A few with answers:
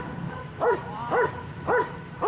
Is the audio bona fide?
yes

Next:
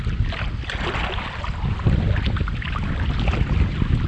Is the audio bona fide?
yes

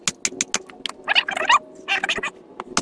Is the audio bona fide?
yes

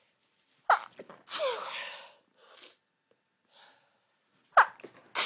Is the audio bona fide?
yes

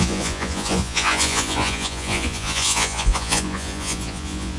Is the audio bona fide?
no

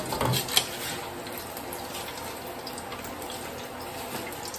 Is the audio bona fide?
yes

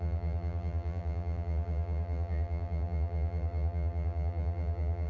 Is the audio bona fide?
no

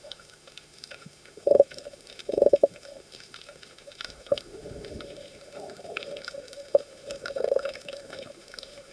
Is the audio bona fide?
no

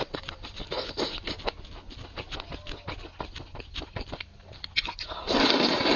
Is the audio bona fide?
yes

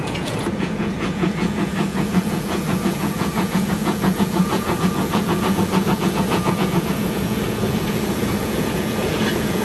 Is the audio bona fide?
no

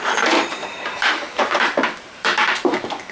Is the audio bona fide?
no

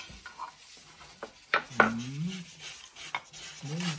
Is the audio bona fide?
yes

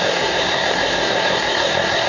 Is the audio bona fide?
no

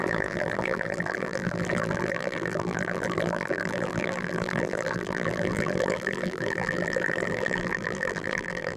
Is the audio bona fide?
no